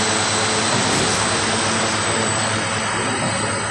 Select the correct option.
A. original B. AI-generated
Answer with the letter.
A